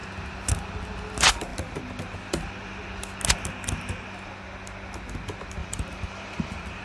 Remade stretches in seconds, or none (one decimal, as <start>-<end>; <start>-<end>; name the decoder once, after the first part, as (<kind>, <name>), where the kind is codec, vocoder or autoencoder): 5.6-6.8 (vocoder, BigVGAN v2)